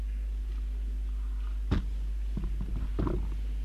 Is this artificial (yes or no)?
no